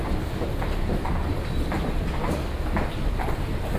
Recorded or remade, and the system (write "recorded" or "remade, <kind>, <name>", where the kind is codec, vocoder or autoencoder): recorded